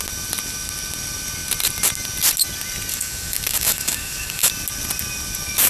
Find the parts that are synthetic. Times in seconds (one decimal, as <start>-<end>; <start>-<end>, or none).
2.9-4.5